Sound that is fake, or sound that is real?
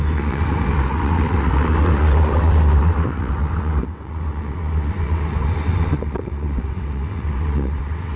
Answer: fake